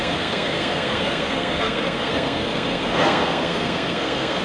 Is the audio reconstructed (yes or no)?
yes